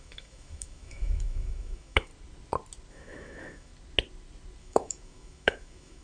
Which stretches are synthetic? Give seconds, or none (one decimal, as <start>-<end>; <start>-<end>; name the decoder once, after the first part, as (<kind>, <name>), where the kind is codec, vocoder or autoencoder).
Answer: 0.0-2.1 (autoencoder, DAC-VAE); 2.9-3.7; 4.6-6.0